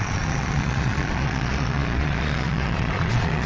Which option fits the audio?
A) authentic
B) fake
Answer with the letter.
B